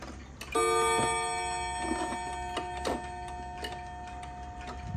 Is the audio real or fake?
real